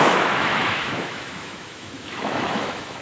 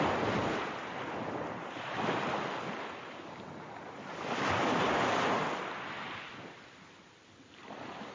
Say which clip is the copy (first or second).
first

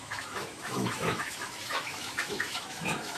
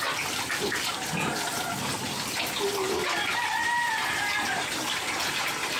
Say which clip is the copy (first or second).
first